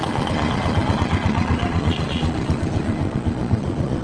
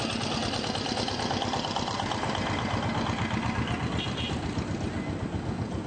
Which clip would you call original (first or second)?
second